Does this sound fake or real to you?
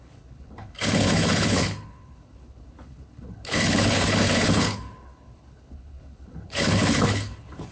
fake